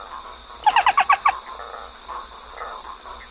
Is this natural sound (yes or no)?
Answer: yes